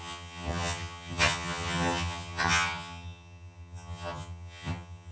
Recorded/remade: remade